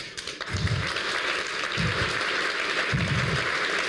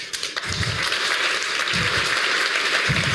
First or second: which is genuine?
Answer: first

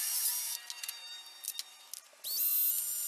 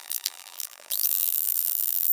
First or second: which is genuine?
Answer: first